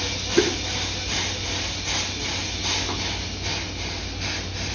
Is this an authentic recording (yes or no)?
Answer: yes